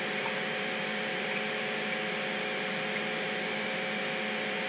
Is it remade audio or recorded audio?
recorded